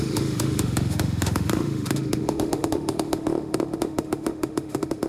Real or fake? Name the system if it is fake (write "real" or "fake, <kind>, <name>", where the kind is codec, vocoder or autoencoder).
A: fake, autoencoder, DAC-VAE